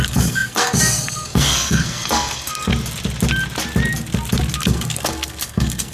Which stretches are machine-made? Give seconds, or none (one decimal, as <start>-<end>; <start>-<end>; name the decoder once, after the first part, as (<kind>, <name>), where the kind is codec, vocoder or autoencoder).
0.0-2.7 (codec, SNAC); 4.6-5.9